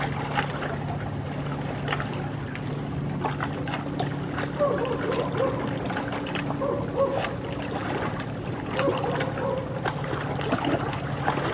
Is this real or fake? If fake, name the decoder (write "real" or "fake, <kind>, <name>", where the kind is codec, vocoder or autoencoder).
real